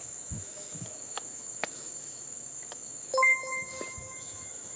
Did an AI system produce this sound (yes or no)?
yes